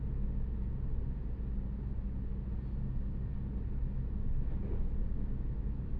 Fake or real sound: real